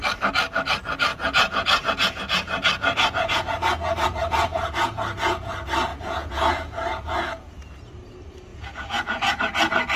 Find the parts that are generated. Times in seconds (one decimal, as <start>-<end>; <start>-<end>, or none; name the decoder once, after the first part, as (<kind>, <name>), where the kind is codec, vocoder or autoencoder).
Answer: 1.1-5.5 (vocoder, Vocos); 5.9-7.9; 8.5-9.4